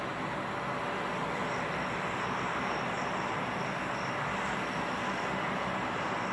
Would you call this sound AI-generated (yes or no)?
no